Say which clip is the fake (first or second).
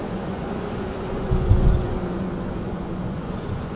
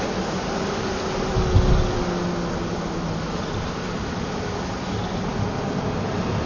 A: first